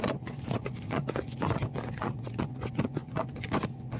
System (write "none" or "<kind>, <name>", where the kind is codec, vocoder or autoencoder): vocoder, Vocos